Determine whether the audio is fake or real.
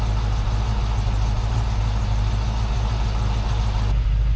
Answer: real